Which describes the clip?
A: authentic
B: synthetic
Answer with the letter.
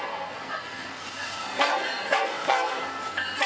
B